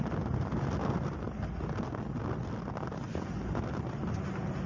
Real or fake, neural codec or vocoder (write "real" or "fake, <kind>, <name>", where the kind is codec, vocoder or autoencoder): real